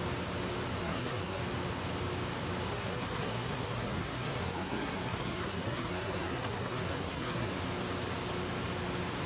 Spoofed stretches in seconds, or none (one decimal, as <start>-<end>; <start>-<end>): 0.8-1.4; 2.7-7.5